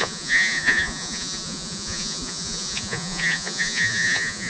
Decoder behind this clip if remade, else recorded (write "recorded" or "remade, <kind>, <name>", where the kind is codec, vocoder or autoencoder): remade, vocoder, Vocos